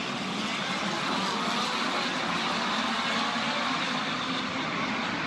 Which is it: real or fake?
real